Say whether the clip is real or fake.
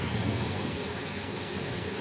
fake